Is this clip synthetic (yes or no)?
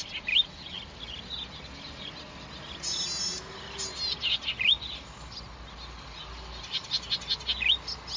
no